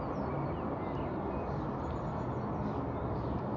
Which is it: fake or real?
real